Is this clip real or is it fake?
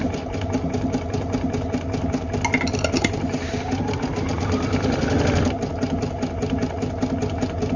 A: real